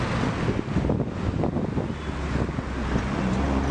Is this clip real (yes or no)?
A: yes